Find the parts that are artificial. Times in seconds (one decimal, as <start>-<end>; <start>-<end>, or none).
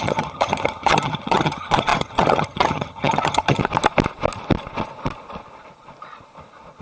0.0-3.6